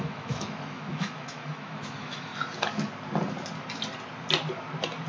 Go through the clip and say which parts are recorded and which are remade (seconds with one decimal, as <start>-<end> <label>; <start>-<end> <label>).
0.0-2.3 remade; 2.3-5.1 recorded